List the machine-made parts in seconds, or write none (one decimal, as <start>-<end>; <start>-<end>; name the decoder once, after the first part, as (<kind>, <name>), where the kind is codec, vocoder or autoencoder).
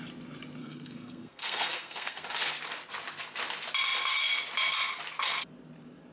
0.6-2.2 (codec, SNAC)